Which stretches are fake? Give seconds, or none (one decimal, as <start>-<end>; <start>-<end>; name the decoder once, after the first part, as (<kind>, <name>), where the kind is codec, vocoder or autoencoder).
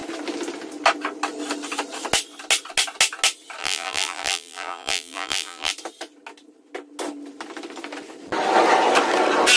3.6-5.7 (vocoder, BigVGAN v2)